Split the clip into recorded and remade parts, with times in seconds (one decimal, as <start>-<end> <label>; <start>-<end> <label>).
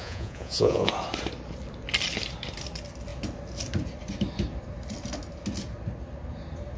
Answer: 0.0-0.9 remade; 0.9-6.8 recorded